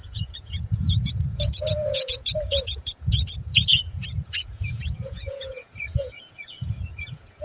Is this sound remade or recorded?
remade